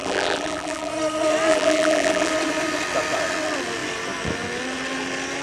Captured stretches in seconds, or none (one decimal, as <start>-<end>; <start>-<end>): 0.9-1.5; 2.3-5.4